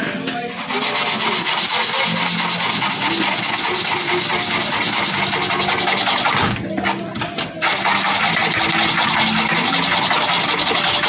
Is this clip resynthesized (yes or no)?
no